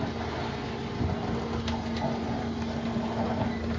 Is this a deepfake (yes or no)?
no